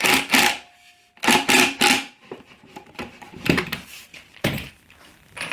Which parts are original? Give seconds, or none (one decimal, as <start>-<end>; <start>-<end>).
0.0-2.2; 3.6-4.1; 4.7-5.5